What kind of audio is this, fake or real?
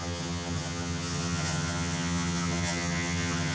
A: fake